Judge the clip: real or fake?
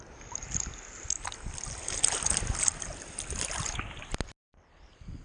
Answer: real